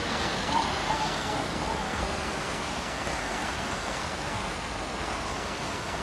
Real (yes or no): no